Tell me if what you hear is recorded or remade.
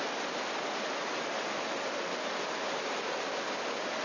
recorded